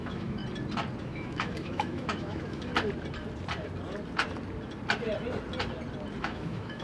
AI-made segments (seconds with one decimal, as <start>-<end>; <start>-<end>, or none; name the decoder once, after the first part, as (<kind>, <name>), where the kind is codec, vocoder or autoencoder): 0.0-0.4 (autoencoder, DAC-VAE); 1.0-2.7; 6.2-6.8